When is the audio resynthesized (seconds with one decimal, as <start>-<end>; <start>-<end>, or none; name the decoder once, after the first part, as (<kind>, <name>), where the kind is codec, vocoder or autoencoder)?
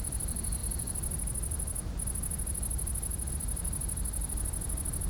none